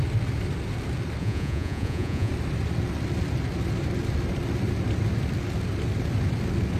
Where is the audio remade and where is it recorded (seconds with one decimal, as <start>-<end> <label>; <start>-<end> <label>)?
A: 0.0-1.2 recorded; 1.2-2.3 remade; 2.3-6.8 recorded